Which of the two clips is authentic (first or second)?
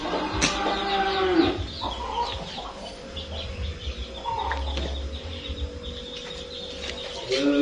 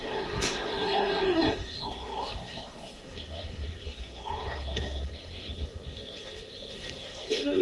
first